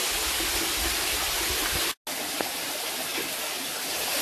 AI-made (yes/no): no